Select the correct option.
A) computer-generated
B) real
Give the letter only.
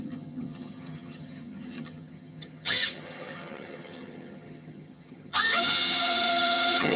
A